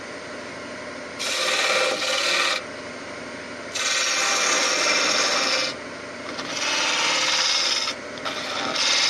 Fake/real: real